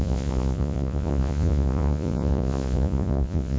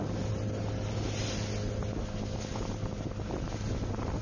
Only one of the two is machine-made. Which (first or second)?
first